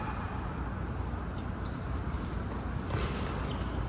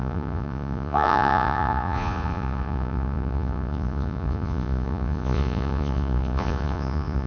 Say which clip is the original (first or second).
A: first